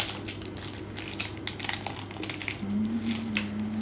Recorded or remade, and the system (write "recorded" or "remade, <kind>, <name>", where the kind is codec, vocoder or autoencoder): recorded